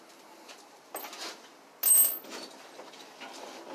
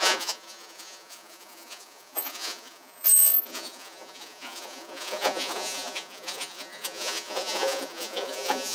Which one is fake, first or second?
second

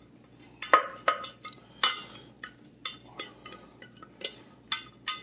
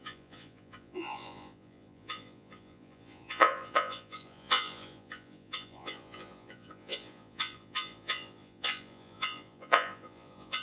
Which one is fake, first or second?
second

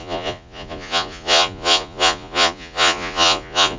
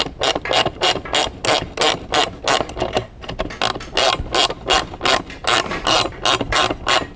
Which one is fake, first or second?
first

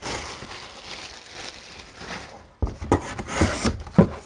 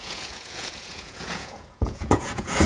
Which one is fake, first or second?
second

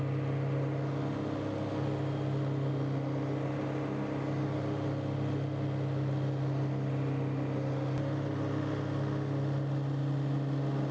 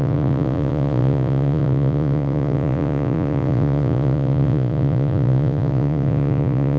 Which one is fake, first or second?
second